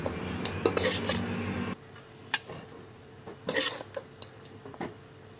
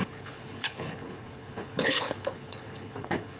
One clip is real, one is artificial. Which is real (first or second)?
first